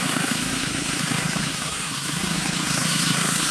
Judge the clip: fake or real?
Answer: fake